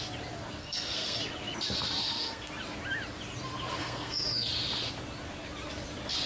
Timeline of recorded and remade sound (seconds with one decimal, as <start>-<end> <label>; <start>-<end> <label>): 0.0-0.6 recorded; 0.6-1.2 remade; 1.2-2.0 recorded; 2.0-2.5 remade; 2.5-3.8 recorded; 3.8-4.5 remade; 4.5-6.3 recorded

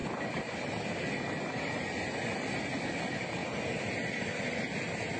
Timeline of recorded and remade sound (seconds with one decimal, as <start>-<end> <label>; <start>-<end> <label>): 0.0-5.2 recorded

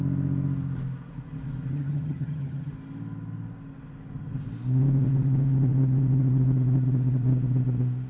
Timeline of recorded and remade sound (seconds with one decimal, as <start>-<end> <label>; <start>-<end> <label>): 0.0-1.7 recorded; 1.7-2.7 remade; 2.7-8.1 recorded

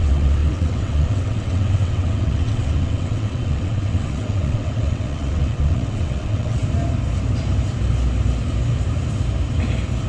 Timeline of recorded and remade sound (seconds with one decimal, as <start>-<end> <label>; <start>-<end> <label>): 0.0-6.6 remade; 6.6-10.1 recorded

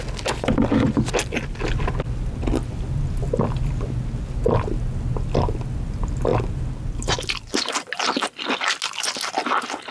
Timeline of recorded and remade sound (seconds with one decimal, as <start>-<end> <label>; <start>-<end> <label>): 0.0-9.9 recorded

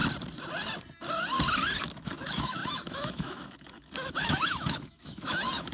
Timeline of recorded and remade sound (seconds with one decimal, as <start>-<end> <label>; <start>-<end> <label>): 0.0-1.8 recorded; 1.8-5.7 remade